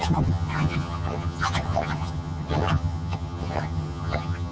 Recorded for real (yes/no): no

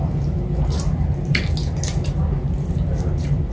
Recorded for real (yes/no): yes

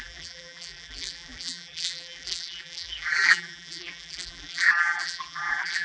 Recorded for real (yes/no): no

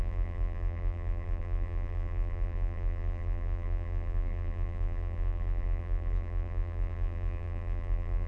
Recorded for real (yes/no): no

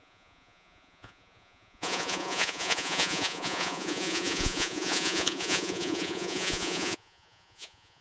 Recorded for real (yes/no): no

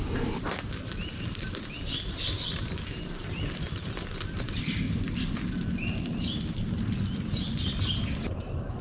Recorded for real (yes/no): yes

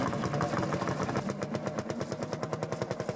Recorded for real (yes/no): yes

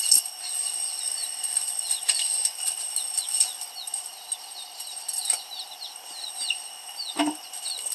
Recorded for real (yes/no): yes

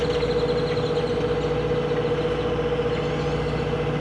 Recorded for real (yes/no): yes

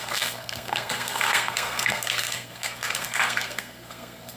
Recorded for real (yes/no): no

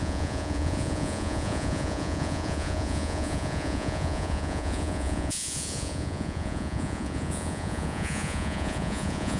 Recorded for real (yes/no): no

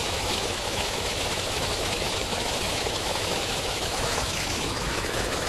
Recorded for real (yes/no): no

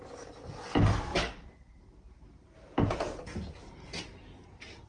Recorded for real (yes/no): yes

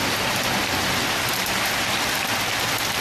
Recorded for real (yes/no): no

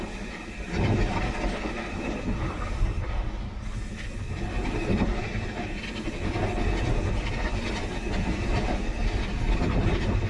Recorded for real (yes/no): yes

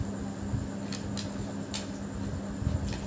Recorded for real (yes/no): yes